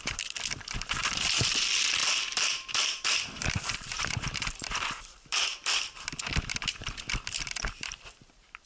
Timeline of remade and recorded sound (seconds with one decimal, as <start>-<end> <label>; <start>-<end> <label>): 0.0-2.0 remade; 2.0-2.7 recorded; 2.7-8.7 remade